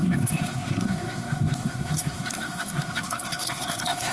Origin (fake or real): fake